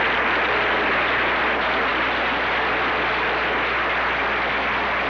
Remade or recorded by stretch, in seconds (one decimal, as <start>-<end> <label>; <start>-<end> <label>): 0.0-5.1 recorded